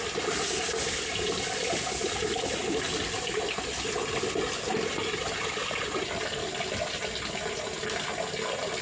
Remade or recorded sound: recorded